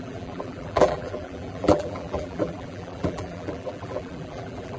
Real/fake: fake